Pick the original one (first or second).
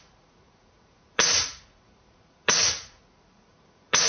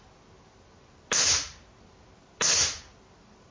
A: second